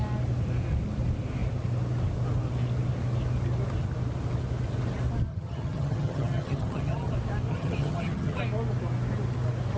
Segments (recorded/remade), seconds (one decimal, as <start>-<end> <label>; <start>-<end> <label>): 0.0-5.3 recorded; 5.3-7.1 remade; 7.1-7.5 recorded; 7.5-8.4 remade; 8.4-9.8 recorded